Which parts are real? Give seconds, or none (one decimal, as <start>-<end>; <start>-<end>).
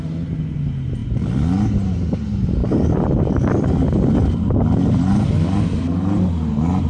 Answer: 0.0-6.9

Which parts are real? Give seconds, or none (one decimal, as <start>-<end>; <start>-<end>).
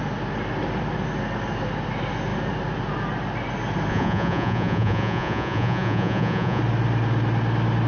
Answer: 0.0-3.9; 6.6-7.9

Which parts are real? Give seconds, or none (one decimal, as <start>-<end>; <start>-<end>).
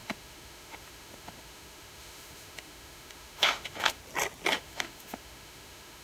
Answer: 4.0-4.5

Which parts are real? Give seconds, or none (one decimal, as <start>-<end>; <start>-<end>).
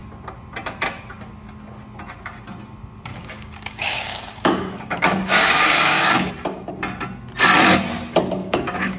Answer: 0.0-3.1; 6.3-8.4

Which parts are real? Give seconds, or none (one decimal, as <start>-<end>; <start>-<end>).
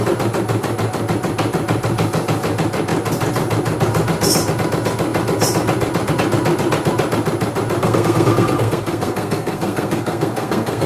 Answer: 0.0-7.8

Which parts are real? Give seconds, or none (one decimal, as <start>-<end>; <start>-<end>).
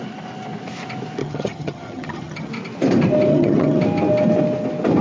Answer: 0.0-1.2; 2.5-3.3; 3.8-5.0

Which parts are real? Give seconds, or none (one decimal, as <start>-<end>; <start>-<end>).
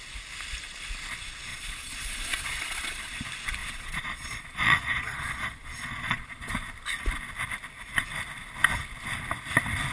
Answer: 0.0-1.5; 3.1-3.6; 6.5-9.9